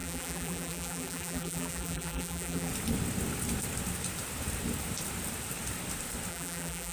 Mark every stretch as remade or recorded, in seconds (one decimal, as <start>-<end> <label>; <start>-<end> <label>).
0.0-2.7 remade; 2.7-6.3 recorded; 6.3-6.9 remade